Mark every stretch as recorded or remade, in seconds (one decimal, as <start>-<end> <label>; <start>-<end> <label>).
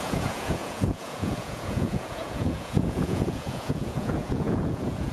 0.0-5.1 remade